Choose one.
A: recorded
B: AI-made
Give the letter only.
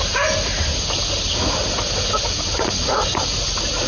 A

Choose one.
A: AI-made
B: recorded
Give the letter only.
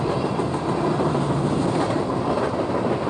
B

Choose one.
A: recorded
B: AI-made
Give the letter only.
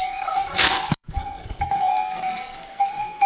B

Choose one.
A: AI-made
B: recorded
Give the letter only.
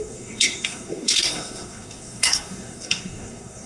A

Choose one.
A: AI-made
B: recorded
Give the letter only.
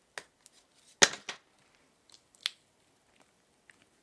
B